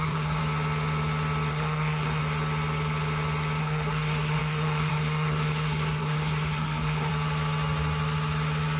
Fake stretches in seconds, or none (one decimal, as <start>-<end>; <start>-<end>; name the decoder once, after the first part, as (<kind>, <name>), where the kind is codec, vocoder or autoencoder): 0.0-0.4 (codec, SNAC); 1.5-2.2; 3.6-7.1